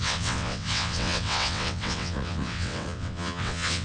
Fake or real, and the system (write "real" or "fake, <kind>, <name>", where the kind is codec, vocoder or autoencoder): fake, vocoder, WaveNeXt